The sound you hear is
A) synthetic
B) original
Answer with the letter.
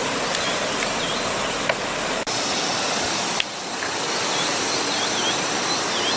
B